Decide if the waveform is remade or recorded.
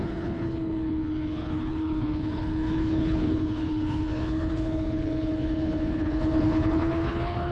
remade